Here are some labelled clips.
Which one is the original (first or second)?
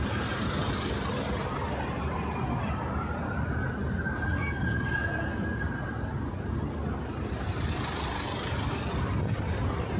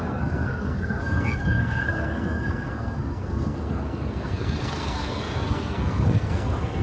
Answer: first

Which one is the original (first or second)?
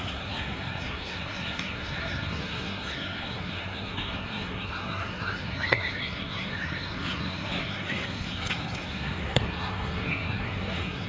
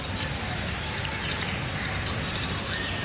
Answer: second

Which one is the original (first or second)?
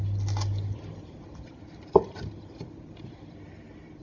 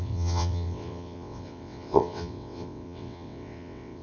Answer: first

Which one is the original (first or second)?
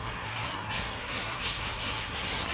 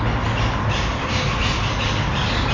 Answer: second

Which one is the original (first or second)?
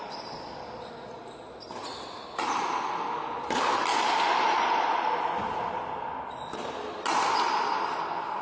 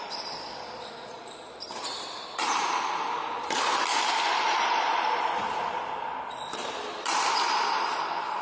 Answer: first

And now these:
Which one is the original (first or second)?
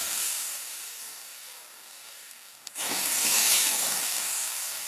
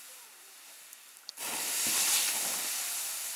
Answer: second